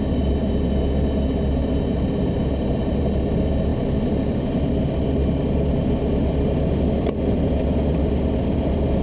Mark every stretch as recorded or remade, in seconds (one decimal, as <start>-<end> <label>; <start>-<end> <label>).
0.0-9.0 recorded